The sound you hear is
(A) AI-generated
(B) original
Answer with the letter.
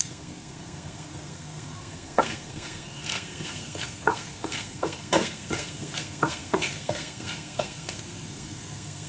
A